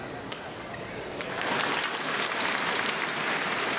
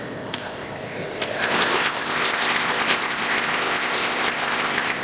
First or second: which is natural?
first